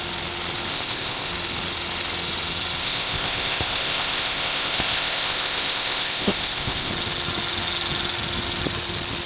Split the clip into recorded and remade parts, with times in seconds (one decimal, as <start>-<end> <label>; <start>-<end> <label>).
0.0-0.7 recorded; 0.7-1.3 remade; 1.3-2.8 recorded; 2.8-6.9 remade; 6.9-9.3 recorded